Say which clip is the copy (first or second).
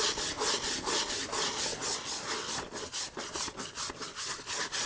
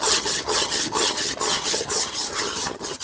second